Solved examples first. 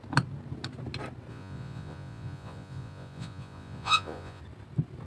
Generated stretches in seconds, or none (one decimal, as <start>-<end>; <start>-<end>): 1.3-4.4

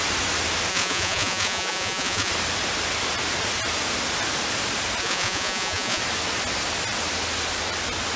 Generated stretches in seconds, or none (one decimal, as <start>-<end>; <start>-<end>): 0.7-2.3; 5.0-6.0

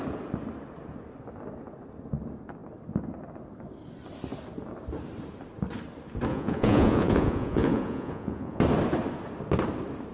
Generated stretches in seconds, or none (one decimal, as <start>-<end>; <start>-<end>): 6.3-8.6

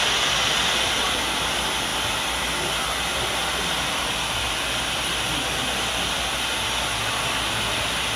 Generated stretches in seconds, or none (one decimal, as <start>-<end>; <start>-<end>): none

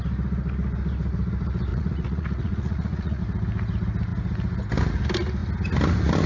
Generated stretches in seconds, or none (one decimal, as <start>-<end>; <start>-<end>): 1.7-3.2

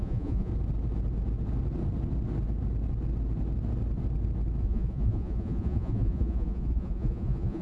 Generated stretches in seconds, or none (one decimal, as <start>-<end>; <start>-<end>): 0.0-0.5; 4.6-7.6

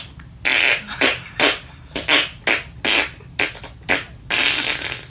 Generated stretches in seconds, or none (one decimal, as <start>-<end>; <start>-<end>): none

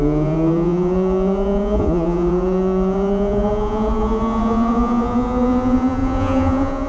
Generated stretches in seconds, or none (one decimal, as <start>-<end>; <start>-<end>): 0.0-6.9